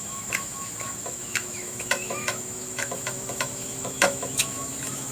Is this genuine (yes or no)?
no